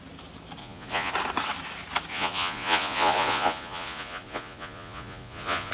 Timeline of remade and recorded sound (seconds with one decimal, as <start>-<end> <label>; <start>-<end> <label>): 0.0-0.6 recorded; 0.6-1.1 remade; 1.1-2.1 recorded; 2.1-5.7 remade